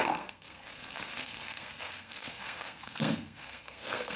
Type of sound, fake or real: fake